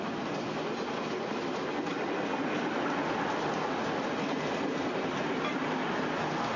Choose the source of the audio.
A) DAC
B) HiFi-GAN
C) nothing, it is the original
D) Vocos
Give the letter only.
C